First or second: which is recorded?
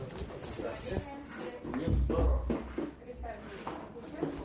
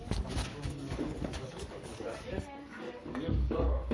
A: first